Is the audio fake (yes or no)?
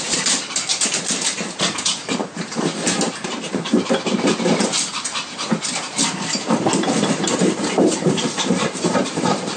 yes